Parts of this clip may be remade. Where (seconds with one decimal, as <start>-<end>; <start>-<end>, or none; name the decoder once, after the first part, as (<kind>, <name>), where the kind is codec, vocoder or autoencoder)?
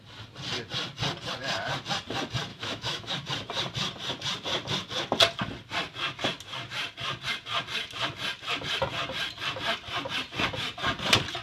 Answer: 2.5-3.1 (autoencoder, DAC-VAE)